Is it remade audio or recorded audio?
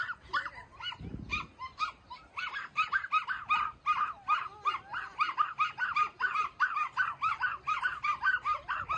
recorded